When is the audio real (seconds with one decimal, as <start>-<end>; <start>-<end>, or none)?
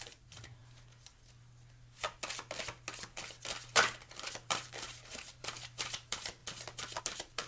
0.6-4.5; 6.4-7.0